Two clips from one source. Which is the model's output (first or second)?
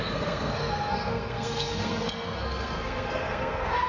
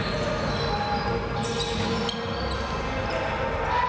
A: first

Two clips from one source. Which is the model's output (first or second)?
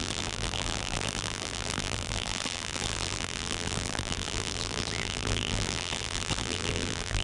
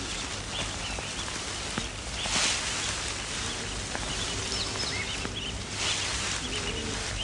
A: first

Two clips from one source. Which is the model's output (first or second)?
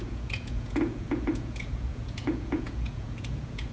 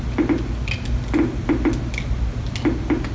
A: first